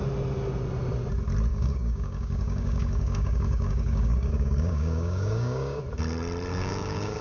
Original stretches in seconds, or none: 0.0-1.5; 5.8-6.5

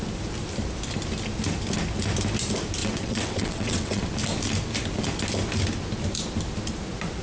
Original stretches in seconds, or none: 0.0-2.8; 4.0-7.2